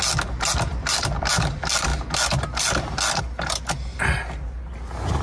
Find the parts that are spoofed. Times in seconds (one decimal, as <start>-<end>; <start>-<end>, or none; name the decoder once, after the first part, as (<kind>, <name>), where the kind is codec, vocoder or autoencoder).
0.7-1.3 (vocoder, BigVGAN v2)